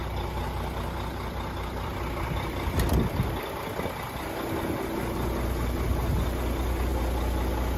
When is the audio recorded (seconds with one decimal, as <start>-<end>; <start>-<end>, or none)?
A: 0.0-7.8